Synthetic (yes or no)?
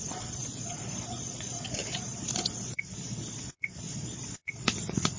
yes